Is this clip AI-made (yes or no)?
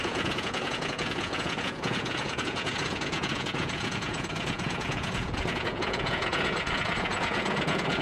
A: yes